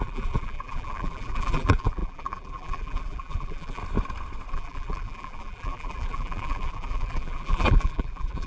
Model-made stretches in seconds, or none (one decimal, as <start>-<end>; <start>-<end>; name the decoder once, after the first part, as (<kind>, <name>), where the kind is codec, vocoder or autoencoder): 0.0-3.8 (vocoder, BigVGAN v2); 4.5-8.5